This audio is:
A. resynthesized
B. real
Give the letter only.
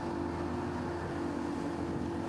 B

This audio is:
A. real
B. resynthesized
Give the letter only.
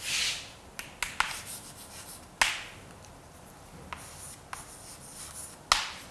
A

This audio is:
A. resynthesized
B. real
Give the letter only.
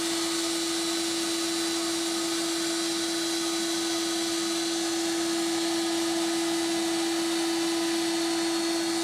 B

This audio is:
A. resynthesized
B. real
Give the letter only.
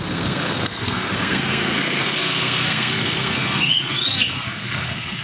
A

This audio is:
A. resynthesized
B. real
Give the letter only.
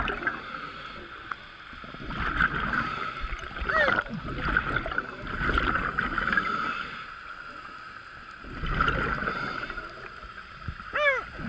B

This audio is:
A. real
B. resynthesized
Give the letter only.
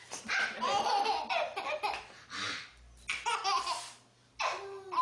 A